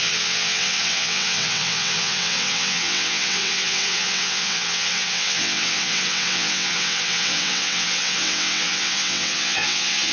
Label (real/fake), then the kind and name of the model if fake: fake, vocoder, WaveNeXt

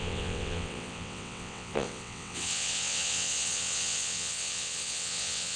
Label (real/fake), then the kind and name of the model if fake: fake, vocoder, WaveNeXt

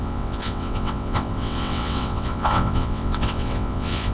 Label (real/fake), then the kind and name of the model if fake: fake, vocoder, WaveNeXt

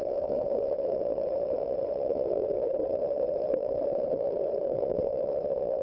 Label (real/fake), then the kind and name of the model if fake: fake, vocoder, WaveNeXt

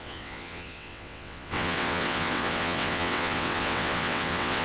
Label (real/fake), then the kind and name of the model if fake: fake, vocoder, WaveNeXt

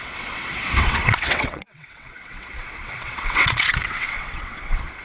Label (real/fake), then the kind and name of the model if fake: fake, vocoder, WaveNeXt